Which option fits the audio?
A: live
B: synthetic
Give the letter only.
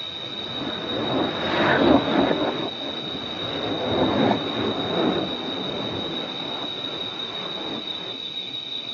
A